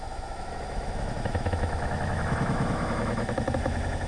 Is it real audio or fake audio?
fake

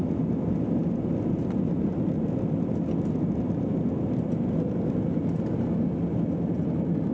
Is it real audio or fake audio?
real